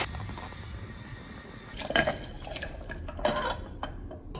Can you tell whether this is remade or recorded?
recorded